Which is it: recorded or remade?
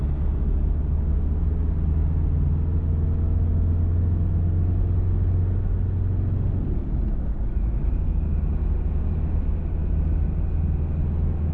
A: recorded